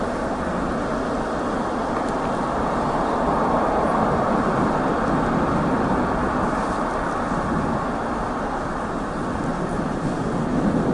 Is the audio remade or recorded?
recorded